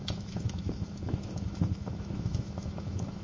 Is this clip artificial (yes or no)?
yes